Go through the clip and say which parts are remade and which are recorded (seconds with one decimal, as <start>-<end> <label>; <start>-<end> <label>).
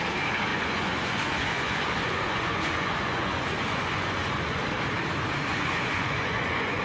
0.0-0.5 recorded; 0.5-4.6 remade; 4.6-5.5 recorded; 5.5-6.8 remade